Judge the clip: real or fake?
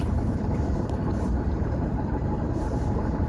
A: fake